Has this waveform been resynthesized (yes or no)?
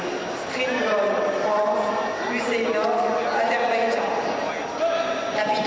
no